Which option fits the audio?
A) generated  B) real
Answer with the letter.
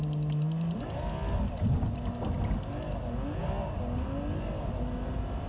B